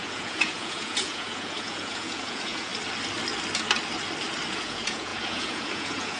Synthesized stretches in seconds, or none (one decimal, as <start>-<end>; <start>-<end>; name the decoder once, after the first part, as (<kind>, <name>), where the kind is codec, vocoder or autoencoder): 0.0-2.7 (vocoder, Vocos); 4.5-6.2